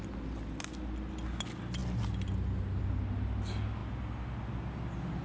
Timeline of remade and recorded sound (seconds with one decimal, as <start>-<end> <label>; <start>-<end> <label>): 0.0-5.2 recorded